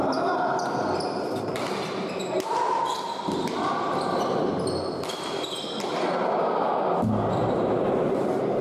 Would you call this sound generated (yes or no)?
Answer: no